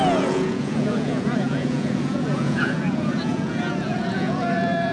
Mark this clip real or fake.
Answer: fake